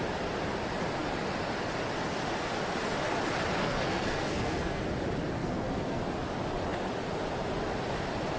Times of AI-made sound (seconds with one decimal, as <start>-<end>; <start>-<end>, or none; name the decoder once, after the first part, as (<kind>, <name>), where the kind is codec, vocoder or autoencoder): 3.6-4.8 (codec, SNAC); 5.4-6.0